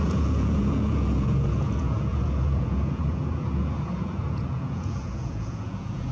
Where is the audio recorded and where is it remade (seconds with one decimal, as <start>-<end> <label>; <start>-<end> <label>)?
0.0-6.1 remade